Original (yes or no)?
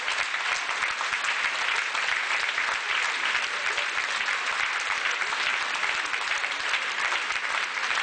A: yes